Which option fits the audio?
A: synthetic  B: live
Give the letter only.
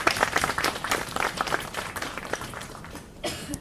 A